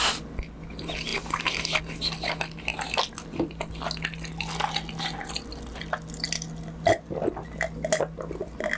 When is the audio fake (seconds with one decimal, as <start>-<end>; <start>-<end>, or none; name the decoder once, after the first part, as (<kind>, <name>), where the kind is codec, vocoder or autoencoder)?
none